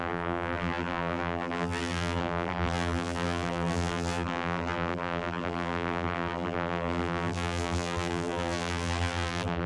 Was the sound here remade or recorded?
remade